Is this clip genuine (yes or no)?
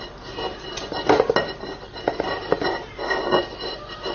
yes